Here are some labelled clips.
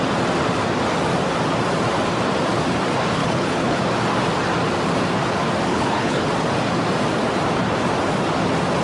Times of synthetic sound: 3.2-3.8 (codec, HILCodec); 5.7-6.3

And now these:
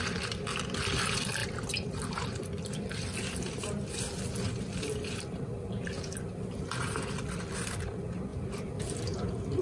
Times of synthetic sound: 1.4-3.9 (vocoder, BigVGAN v2); 8.3-9.0